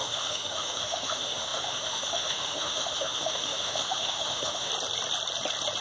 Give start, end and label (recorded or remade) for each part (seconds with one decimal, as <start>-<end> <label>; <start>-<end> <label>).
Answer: 0.0-4.7 remade; 4.7-5.8 recorded